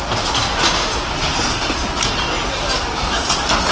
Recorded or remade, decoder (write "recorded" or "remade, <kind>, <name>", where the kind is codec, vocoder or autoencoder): recorded